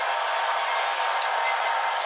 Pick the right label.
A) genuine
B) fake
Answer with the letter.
A